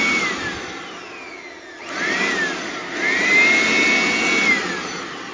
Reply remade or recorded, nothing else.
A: recorded